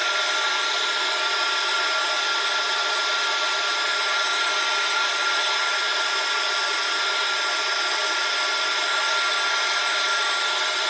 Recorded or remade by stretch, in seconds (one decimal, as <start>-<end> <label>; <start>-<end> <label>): 0.0-10.9 recorded